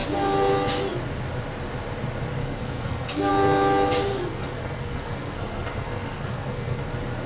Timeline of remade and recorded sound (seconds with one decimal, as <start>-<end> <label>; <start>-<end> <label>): 0.0-2.4 recorded; 2.4-3.3 remade; 3.3-4.1 recorded; 4.1-6.8 remade; 6.8-7.3 recorded